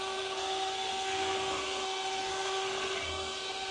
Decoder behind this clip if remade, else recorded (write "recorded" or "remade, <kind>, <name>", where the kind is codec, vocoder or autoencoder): remade, codec, SNAC